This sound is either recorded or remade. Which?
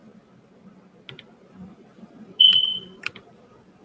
recorded